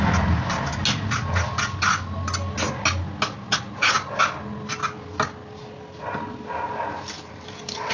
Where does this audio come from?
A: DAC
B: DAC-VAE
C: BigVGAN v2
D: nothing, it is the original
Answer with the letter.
D